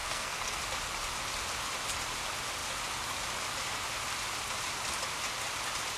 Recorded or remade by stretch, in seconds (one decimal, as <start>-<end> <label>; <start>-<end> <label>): 0.0-0.6 remade; 0.6-6.0 recorded